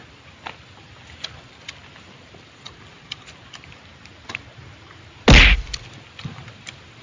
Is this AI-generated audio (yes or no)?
no